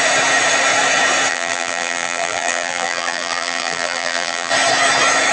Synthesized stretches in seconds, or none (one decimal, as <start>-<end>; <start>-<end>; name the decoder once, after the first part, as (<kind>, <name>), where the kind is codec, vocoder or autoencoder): 1.3-4.5 (vocoder, BigVGAN v2)